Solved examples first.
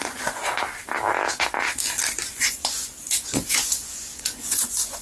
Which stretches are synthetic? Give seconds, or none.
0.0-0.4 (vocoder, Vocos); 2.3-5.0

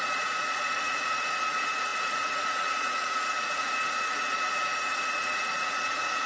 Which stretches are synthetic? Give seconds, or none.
0.0-6.3 (vocoder, Vocos)

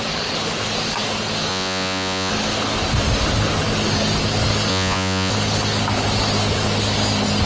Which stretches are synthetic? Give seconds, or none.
1.5-2.3 (vocoder, Vocos); 4.7-5.3

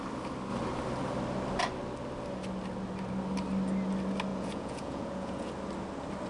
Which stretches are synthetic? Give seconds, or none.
4.3-5.5 (vocoder, Vocos)

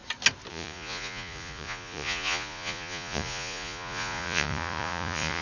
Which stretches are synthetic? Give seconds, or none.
0.5-5.4 (vocoder, Vocos)

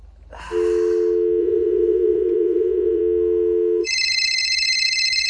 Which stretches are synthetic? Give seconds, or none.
1.4-3.0 (vocoder, Vocos); 3.8-5.3